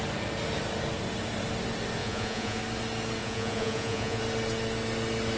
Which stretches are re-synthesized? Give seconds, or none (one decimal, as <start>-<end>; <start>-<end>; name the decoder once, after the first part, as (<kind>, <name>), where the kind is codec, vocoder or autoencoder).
2.0-2.6 (vocoder, Vocos); 3.2-4.2